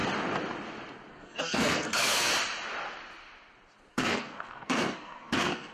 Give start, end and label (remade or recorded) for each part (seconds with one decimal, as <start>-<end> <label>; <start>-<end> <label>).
0.0-1.1 recorded; 1.1-2.3 remade; 2.3-3.9 recorded; 3.9-5.7 remade